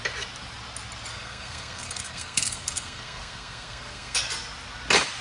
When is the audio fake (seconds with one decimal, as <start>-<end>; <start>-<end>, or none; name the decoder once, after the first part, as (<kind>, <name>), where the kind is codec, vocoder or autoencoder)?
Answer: 1.1-4.2 (codec, SNAC)